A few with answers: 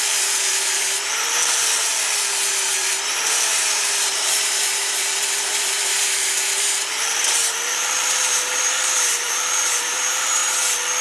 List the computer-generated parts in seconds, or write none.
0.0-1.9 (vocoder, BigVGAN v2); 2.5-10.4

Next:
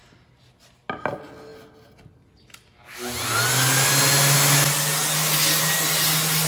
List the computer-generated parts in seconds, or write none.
none

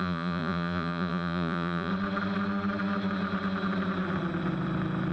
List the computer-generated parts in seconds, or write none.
0.0-1.9 (vocoder, Vocos)

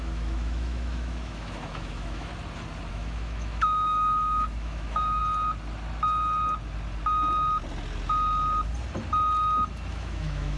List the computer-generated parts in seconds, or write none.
0.0-2.3 (autoencoder, DAC-VAE); 2.9-5.2; 9.9-10.6

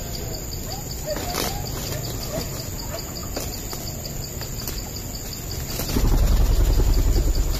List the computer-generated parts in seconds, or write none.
none

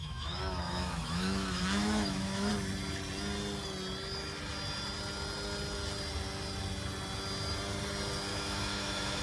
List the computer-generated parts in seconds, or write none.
0.0-2.5 (autoencoder, DAC-VAE); 8.3-9.2

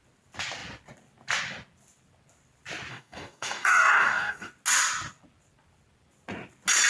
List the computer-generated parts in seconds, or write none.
2.9-4.5 (codec, DAC)